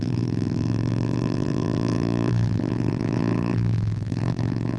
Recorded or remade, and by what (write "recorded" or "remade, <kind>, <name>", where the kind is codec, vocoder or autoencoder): remade, vocoder, BigVGAN v2